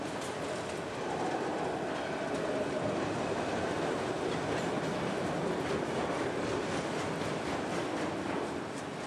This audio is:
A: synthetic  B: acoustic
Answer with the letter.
B